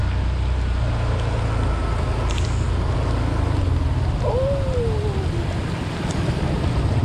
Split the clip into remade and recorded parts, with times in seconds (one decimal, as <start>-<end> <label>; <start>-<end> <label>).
0.0-7.0 recorded